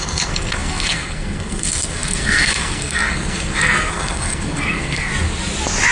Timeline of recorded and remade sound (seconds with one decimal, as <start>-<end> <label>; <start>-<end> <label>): 0.0-5.1 remade; 5.1-5.9 recorded